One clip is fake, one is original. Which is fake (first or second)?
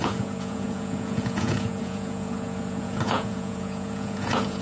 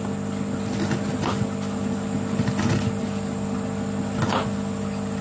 first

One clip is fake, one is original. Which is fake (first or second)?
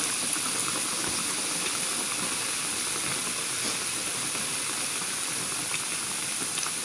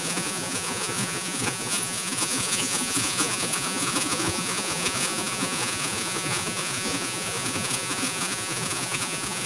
second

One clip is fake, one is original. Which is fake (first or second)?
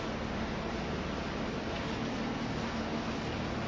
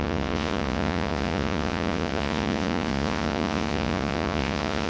second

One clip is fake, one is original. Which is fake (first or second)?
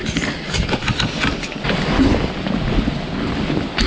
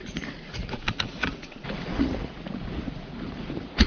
second